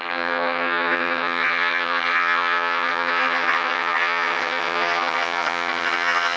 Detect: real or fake fake